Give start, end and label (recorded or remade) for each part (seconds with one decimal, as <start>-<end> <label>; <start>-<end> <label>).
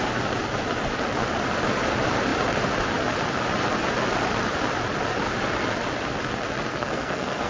0.0-6.7 recorded; 6.7-7.5 remade